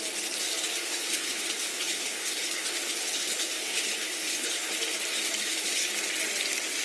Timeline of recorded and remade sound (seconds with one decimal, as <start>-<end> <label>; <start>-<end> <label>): 0.0-0.8 recorded; 0.8-4.8 remade; 4.8-5.4 recorded; 5.4-5.9 remade; 5.9-6.8 recorded